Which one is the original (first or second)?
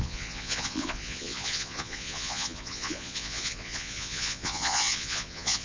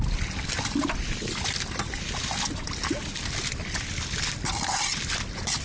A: second